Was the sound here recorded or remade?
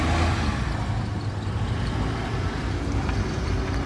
recorded